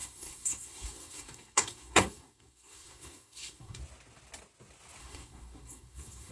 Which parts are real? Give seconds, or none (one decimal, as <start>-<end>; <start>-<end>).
3.8-5.0

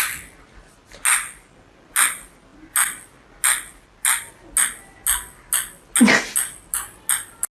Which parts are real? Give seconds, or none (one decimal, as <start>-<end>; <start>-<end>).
0.0-7.5

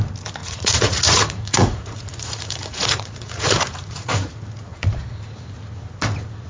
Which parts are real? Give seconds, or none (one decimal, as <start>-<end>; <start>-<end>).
0.0-0.4; 4.3-4.7; 5.2-6.5

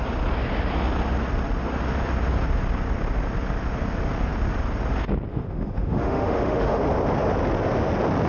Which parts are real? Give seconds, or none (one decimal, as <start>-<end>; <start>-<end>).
0.0-5.3; 6.8-8.3

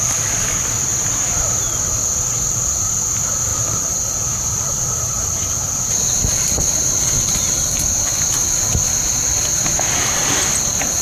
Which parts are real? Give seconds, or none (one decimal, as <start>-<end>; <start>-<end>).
0.0-3.5; 8.0-11.0